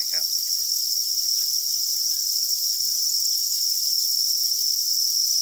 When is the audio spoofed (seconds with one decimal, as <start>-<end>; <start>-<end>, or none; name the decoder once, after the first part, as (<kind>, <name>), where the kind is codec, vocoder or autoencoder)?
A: none